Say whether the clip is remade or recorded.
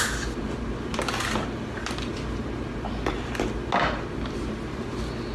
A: recorded